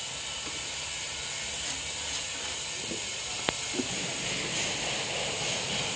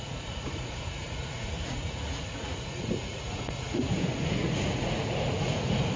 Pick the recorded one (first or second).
first